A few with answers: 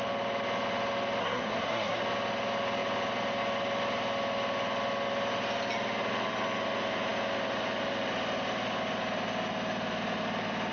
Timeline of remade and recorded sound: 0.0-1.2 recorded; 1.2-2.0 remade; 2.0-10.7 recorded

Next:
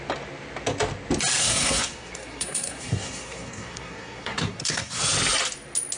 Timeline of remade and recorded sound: 0.0-1.4 recorded; 1.4-5.0 remade; 5.0-6.0 recorded

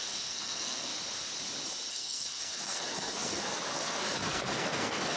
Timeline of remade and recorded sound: 0.0-0.9 remade; 0.9-1.9 recorded; 1.9-5.2 remade